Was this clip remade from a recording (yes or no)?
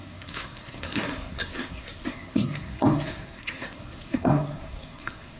yes